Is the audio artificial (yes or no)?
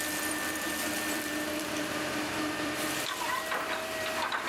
yes